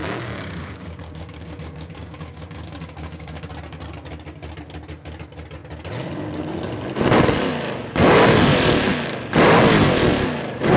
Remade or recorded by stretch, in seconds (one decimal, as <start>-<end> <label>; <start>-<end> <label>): 0.0-3.5 remade; 3.5-10.8 recorded